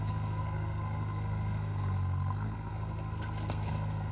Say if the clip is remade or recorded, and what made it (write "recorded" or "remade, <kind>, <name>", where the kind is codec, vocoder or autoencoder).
remade, codec, SNAC